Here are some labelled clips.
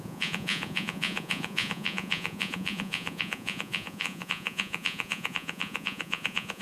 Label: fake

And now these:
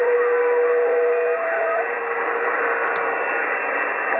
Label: real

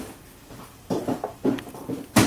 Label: fake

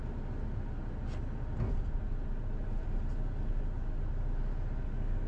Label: real